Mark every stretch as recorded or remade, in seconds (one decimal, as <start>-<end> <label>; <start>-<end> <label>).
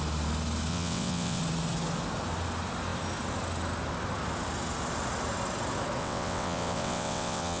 0.0-0.7 recorded; 0.7-1.4 remade; 1.4-6.0 recorded; 6.0-7.6 remade